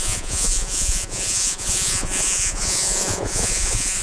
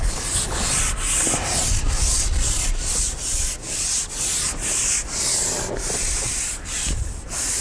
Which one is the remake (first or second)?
first